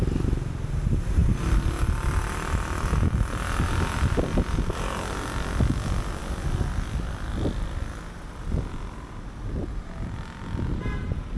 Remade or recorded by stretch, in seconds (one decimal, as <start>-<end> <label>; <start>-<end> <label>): 0.0-11.4 recorded